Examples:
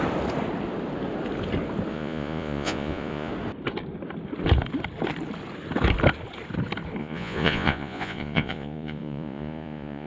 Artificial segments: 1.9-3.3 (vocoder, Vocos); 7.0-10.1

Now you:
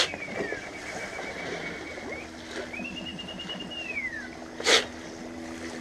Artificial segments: 0.5-1.6 (vocoder, BigVGAN v2)

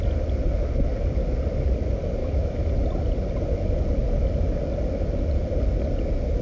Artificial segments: 2.2-2.7 (autoencoder, DAC-VAE)

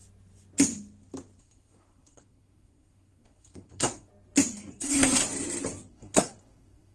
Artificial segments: 1.4-4.1 (codec, SNAC); 4.7-5.2; 5.9-6.9

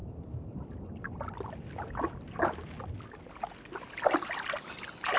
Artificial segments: none

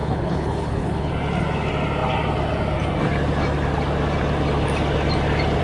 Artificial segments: 0.0-1.1 (codec, HILCodec)